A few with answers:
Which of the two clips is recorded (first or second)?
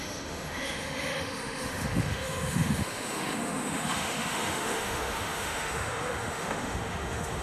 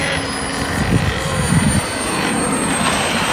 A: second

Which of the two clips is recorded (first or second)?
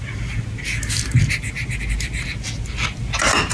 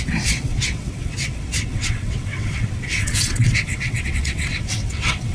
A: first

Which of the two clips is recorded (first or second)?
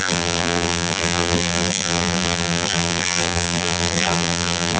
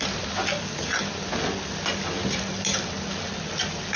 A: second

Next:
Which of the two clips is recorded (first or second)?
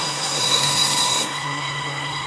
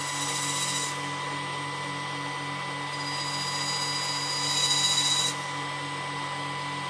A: second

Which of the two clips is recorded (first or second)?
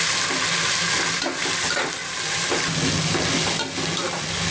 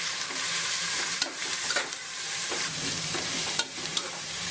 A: first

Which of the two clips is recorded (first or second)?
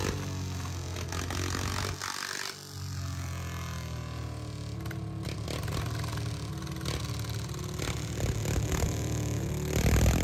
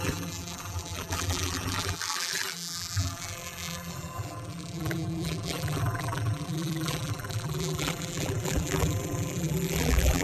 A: first